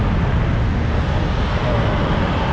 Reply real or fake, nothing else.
real